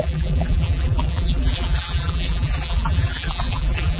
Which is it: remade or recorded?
remade